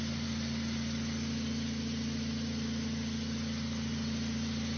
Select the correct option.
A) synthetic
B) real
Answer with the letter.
B